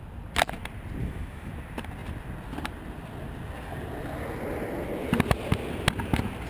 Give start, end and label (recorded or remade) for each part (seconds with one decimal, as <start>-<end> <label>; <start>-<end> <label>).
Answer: 0.0-1.0 recorded; 1.0-1.5 remade; 1.5-6.5 recorded